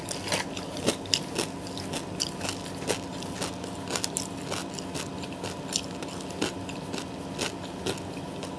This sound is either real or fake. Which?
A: real